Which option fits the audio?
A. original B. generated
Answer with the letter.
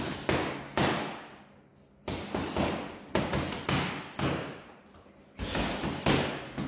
A